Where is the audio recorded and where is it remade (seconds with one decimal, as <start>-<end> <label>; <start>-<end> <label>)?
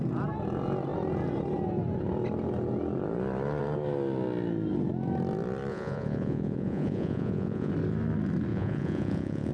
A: 0.0-5.7 recorded; 5.7-7.7 remade; 7.7-8.5 recorded; 8.5-9.5 remade